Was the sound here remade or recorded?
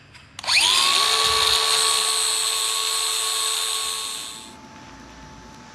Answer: recorded